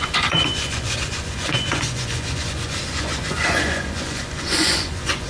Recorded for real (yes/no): no